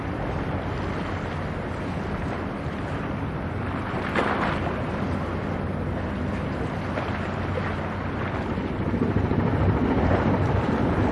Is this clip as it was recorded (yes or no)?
yes